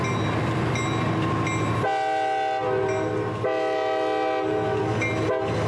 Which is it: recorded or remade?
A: recorded